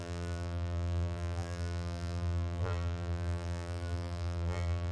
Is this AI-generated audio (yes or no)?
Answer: yes